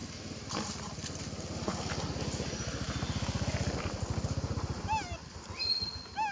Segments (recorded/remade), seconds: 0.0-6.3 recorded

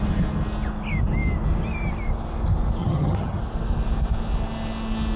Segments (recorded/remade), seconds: 0.0-2.8 recorded; 2.8-3.4 remade; 3.4-5.2 recorded